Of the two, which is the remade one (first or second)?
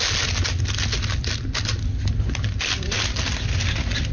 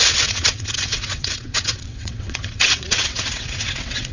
second